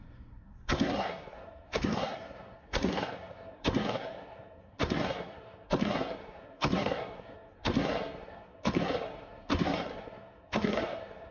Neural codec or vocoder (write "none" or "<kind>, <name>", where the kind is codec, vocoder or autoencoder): codec, SNAC